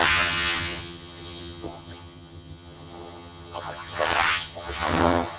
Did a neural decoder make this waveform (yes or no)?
yes